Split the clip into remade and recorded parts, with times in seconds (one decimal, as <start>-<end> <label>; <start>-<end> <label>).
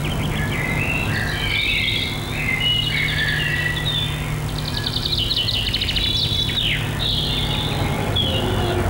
0.0-8.9 recorded